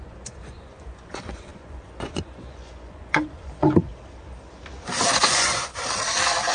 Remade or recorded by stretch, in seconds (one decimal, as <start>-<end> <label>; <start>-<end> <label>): 0.0-3.9 remade; 3.9-5.2 recorded; 5.2-5.7 remade; 5.7-6.5 recorded